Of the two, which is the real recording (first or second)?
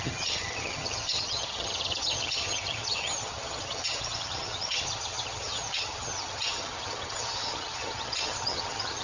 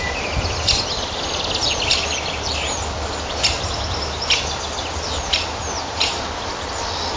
second